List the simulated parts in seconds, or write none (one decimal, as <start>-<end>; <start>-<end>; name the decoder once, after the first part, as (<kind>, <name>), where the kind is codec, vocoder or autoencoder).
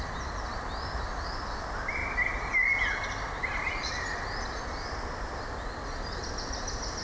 none